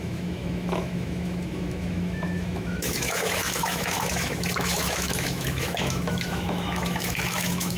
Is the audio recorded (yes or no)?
no